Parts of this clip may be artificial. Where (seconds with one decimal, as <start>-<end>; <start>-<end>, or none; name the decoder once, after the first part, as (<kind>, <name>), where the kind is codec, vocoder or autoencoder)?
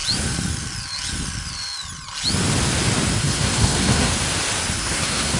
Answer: 3.2-4.1 (codec, SNAC); 4.8-5.4